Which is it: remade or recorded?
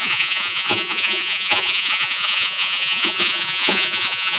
remade